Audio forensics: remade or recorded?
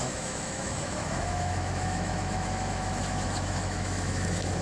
remade